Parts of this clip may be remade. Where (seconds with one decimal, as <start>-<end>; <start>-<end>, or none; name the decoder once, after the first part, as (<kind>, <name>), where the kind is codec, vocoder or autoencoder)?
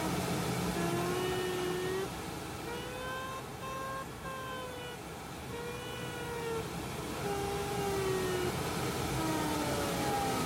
none